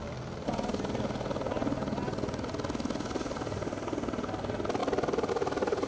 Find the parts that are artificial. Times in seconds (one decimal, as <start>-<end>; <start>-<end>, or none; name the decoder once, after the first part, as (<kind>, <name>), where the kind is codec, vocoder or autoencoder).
none